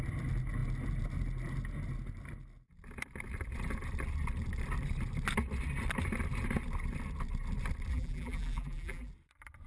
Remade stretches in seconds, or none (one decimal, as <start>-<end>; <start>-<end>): 7.9-9.1